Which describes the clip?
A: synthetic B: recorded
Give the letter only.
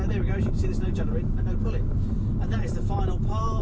B